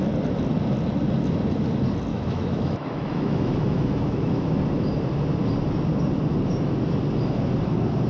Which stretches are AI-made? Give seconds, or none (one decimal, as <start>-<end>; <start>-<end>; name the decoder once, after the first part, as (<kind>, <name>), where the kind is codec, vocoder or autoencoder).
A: 2.1-4.6 (autoencoder, DAC-VAE)